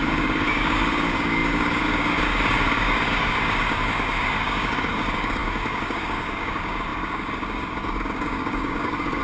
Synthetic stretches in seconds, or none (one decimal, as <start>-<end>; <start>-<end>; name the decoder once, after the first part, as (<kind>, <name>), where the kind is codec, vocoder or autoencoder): 0.0-9.2 (codec, DAC)

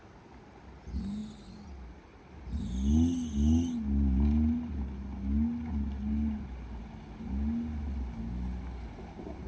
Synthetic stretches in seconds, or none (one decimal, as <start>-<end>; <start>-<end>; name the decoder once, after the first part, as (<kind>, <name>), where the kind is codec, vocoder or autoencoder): none

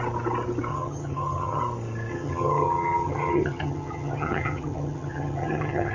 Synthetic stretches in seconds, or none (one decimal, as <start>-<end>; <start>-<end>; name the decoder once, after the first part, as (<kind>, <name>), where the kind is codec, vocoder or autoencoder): 0.7-1.6 (vocoder, HiFi-GAN); 2.1-5.9

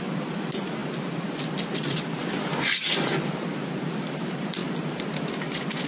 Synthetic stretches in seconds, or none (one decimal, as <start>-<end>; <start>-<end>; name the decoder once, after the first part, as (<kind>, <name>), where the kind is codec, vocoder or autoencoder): 0.0-2.2 (vocoder, BigVGAN v2); 2.7-4.6; 5.2-5.9

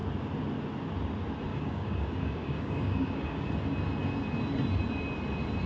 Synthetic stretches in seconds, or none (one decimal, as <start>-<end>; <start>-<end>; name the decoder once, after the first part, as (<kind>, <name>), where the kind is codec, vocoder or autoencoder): 1.5-3.5 (codec, DAC)